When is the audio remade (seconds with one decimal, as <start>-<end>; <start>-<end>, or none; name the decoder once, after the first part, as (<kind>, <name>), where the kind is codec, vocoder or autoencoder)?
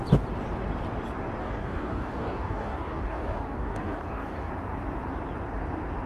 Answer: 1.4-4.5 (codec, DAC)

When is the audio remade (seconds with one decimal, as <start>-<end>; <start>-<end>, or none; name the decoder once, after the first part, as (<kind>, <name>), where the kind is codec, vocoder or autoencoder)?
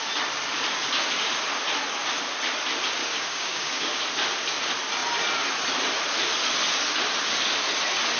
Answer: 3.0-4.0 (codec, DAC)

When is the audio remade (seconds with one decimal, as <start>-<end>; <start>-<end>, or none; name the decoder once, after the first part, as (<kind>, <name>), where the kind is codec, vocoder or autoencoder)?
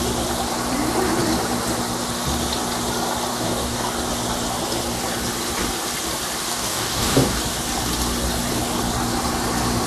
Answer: 3.3-3.9 (codec, DAC); 6.5-7.4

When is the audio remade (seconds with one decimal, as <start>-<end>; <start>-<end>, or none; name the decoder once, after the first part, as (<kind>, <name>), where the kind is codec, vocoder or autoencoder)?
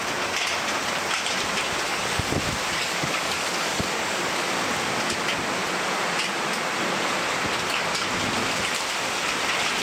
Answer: 1.9-2.4 (codec, DAC); 2.8-4.4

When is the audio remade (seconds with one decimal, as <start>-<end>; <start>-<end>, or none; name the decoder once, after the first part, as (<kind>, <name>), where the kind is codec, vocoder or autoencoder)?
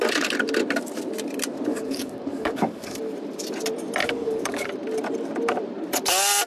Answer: 1.7-3.0 (codec, DAC); 4.0-4.7